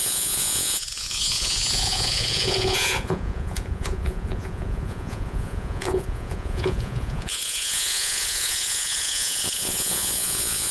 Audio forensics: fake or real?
fake